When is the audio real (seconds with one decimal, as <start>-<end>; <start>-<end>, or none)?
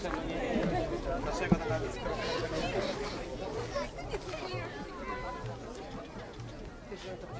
0.0-7.4